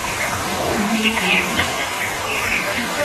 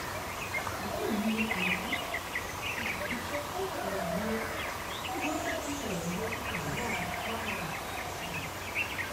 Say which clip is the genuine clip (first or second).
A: second